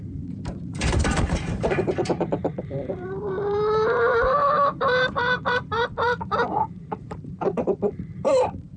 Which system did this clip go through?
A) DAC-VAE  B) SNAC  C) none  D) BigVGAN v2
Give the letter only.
D